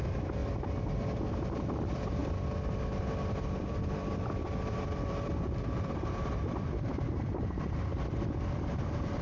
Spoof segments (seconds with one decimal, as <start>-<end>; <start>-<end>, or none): 0.0-0.4; 1.7-2.2; 3.0-9.2

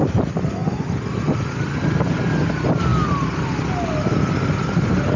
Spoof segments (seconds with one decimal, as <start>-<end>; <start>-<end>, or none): none

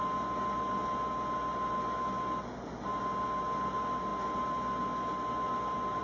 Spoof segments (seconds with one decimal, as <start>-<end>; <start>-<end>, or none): none